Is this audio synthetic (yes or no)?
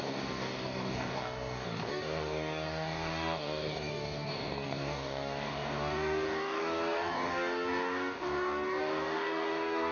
yes